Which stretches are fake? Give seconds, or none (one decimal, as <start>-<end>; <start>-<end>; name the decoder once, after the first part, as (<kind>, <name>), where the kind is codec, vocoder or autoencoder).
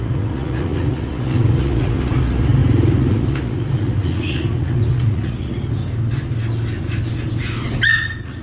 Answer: 0.0-5.8 (vocoder, Vocos); 8.0-8.4